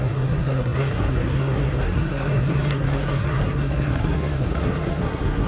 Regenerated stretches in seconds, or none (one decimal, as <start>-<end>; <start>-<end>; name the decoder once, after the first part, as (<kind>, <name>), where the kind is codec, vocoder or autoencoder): 0.0-5.5 (codec, SNAC)